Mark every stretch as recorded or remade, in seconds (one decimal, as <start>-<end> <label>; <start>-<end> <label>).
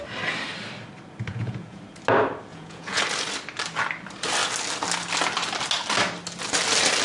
0.0-1.3 recorded; 1.3-1.8 remade; 1.8-2.5 recorded; 2.5-3.0 remade; 3.0-7.0 recorded